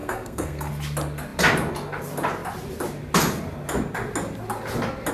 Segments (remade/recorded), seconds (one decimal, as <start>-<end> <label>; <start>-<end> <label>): 0.0-0.7 remade; 0.7-5.1 recorded